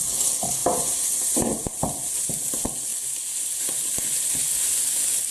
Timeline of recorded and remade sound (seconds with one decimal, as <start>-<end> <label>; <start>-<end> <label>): 0.0-0.6 recorded; 0.6-1.8 remade; 1.8-5.3 recorded